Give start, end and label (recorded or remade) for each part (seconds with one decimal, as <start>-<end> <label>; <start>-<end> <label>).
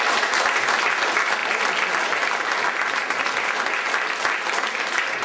0.0-5.2 recorded